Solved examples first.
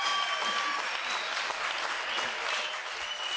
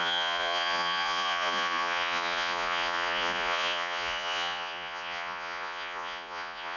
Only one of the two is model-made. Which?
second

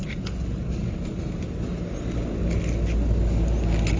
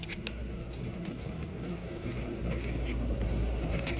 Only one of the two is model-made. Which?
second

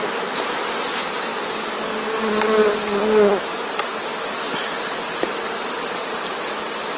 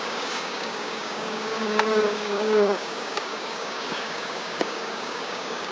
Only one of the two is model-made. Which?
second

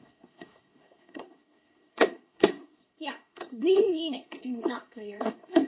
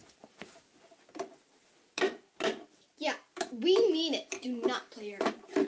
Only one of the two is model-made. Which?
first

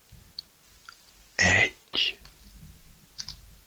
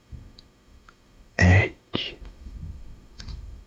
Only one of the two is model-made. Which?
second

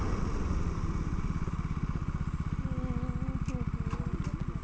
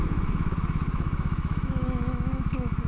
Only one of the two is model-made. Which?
second